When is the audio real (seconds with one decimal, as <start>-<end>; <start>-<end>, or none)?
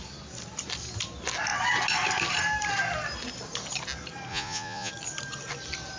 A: 0.0-4.3; 4.9-6.0